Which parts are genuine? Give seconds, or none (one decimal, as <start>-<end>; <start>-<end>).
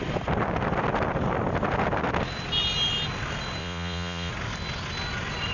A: 0.0-3.6; 4.3-5.5